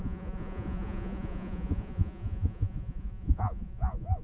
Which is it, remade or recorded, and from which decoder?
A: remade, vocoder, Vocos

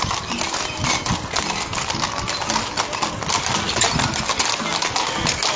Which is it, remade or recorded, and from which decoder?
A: recorded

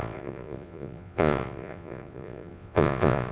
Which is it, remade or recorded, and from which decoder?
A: remade, vocoder, Vocos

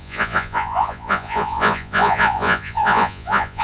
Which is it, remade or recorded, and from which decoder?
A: remade, vocoder, Vocos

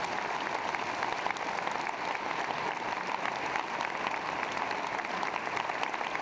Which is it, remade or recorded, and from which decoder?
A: recorded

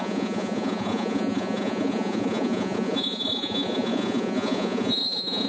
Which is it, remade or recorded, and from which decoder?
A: remade, vocoder, Vocos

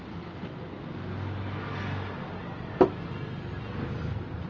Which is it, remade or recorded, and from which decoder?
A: recorded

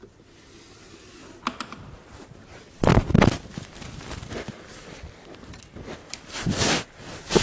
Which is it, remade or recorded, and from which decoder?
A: recorded